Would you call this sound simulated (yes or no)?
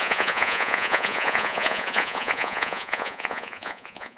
yes